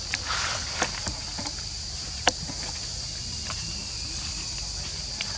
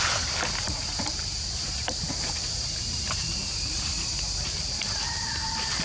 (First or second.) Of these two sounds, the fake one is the second